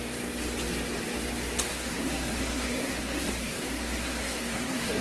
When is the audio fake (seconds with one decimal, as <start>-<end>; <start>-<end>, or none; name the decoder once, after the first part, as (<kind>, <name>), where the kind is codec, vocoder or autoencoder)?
1.7-5.0 (codec, SNAC)